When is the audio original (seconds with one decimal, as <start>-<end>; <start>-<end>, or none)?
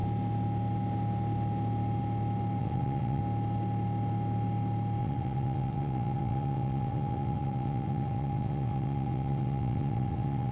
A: 0.0-2.6; 3.2-5.0